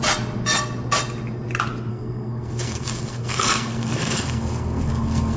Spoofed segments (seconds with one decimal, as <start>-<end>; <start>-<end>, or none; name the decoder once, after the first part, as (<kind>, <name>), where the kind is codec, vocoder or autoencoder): 1.9-5.4 (codec, SNAC)